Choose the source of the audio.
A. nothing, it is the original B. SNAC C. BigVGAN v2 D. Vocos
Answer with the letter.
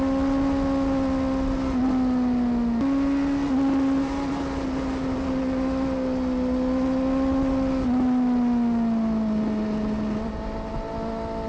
A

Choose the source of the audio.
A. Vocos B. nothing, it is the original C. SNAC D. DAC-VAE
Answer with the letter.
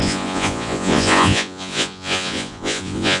A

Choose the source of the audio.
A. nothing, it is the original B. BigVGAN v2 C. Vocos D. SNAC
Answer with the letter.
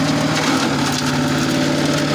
A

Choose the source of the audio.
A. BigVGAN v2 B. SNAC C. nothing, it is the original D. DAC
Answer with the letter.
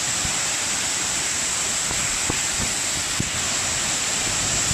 C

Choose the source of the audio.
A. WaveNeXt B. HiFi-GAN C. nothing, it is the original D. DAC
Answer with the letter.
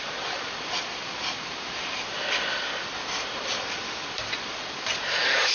C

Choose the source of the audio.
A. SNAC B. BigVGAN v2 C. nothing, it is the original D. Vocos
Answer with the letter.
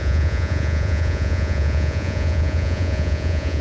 D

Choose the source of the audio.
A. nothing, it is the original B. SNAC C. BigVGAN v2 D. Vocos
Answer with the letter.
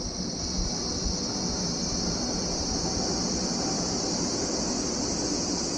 A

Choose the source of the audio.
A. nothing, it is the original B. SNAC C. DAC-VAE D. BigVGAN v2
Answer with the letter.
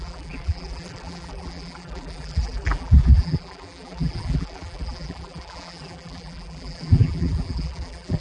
D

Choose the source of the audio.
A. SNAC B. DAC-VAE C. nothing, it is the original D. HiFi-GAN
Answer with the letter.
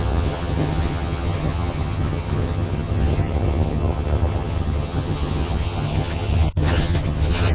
D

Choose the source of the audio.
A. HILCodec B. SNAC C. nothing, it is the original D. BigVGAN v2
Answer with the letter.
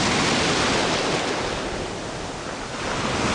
C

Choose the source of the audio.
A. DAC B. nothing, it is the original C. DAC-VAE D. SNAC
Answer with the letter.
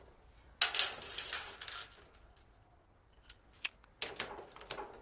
B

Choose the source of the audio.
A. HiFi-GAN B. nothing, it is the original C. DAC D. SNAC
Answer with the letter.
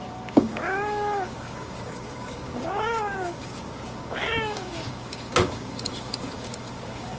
C